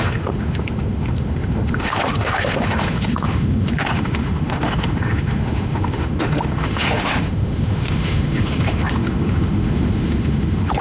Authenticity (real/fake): fake